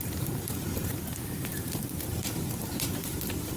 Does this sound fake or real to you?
fake